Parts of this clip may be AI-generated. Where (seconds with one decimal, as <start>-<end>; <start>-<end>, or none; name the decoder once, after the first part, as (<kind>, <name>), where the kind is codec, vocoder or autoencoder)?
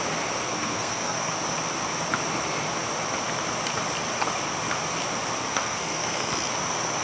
0.5-1.3 (codec, SNAC); 5.5-6.3